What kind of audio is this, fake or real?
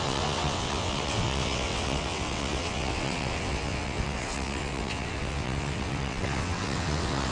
fake